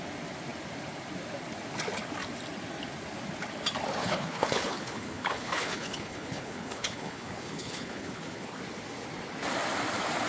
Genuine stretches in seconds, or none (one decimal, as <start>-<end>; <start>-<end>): 0.0-4.0; 8.6-10.3